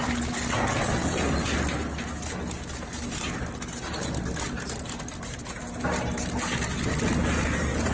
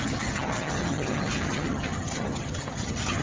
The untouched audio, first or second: first